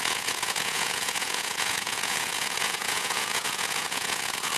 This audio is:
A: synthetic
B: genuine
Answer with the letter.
A